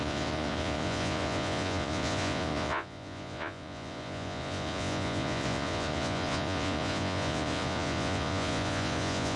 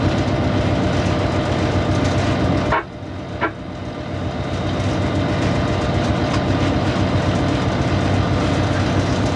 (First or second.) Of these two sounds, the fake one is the first